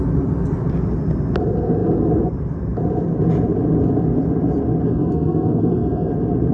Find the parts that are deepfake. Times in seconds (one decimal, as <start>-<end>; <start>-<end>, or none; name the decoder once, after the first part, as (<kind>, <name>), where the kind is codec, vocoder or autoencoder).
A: 4.9-6.1 (codec, SNAC)